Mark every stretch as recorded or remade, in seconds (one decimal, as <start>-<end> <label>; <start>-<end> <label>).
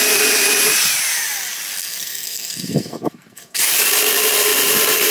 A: 0.0-1.8 recorded; 1.8-3.6 remade; 3.6-5.1 recorded